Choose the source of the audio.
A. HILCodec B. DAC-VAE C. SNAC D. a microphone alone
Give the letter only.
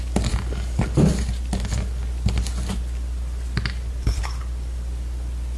D